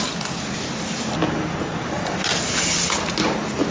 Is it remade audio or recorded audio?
recorded